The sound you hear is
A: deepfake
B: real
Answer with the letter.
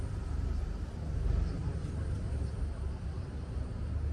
B